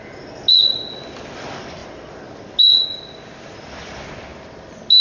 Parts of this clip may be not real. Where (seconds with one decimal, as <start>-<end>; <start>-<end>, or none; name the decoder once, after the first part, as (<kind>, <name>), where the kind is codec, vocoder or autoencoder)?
none